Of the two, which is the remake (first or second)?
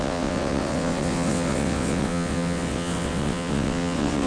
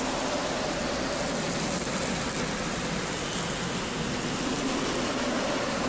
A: first